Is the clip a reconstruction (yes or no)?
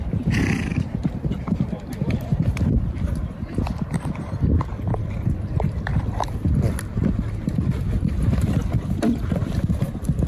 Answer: yes